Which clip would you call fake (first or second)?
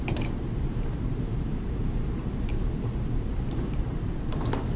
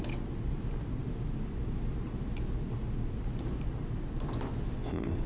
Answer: first